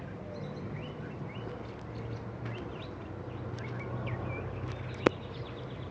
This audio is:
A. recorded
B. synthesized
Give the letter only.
A